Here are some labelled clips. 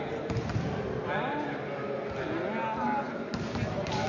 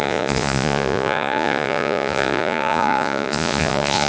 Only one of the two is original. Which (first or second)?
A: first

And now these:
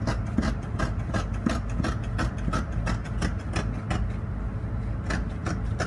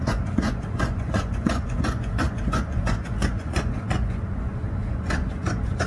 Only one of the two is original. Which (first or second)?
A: first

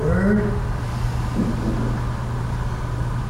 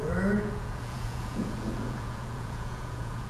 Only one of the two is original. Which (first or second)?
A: first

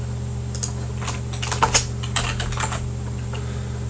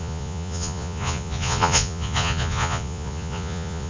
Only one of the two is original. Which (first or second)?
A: first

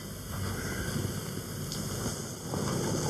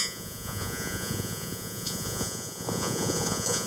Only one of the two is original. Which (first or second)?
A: first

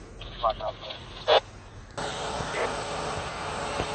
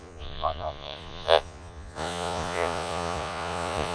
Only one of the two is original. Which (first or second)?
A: first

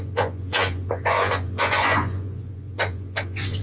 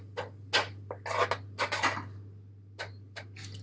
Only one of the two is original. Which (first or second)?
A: second